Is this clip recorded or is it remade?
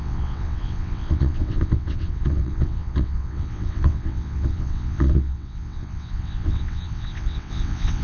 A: remade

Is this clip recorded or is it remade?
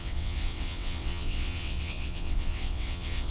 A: remade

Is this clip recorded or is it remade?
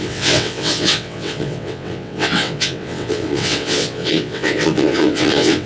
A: remade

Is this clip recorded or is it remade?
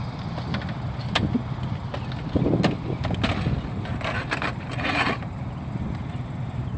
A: recorded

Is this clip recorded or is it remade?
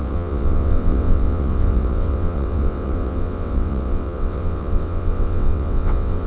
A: remade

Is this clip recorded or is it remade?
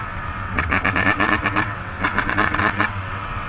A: remade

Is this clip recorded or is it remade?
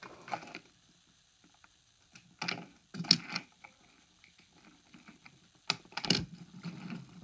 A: recorded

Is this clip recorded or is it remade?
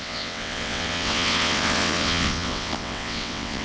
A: remade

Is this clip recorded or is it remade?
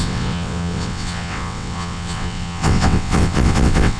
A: remade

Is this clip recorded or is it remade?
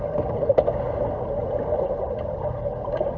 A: recorded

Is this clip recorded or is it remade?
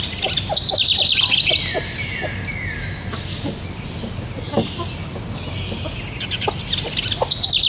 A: recorded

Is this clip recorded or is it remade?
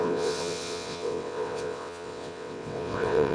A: remade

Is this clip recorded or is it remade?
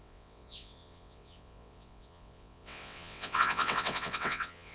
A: remade